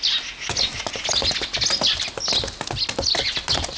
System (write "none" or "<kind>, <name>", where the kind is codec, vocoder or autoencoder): none